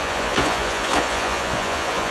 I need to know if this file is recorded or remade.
remade